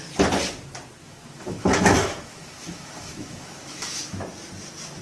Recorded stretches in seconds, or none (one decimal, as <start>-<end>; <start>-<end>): 0.0-1.0; 4.0-5.0